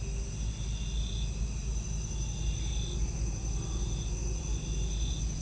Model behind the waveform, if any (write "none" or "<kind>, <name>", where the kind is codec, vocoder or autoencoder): none